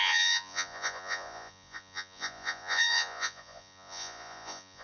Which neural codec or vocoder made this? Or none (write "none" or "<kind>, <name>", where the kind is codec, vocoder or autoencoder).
vocoder, Vocos